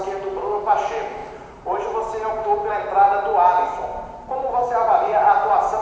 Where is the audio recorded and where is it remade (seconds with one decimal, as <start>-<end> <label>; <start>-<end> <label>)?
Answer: 0.0-1.2 recorded; 1.2-2.7 remade; 2.7-3.9 recorded; 3.9-4.5 remade; 4.5-5.8 recorded